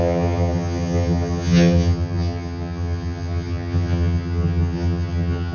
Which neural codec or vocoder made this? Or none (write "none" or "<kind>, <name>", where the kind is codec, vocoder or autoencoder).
vocoder, HiFi-GAN